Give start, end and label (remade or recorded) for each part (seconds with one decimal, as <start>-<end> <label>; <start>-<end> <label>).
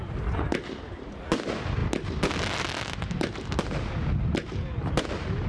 0.0-5.5 recorded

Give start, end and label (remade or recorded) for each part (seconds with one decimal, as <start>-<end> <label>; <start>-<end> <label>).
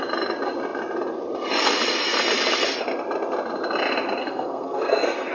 0.0-4.2 recorded; 4.2-5.3 remade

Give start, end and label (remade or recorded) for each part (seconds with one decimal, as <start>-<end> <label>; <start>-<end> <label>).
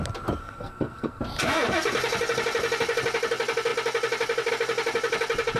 0.0-0.4 recorded; 0.4-1.2 remade; 1.2-5.6 recorded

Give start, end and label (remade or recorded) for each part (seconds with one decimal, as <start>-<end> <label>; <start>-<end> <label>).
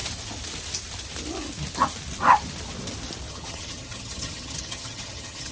0.0-3.3 recorded; 3.3-5.5 remade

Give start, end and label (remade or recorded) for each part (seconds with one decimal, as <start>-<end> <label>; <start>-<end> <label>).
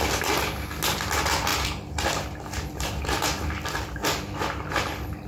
0.0-5.3 recorded